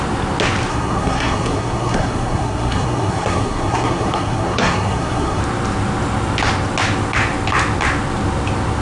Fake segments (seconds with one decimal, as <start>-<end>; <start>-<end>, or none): 0.7-5.4